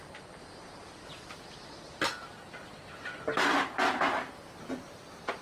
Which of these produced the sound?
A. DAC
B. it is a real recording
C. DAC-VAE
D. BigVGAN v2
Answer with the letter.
B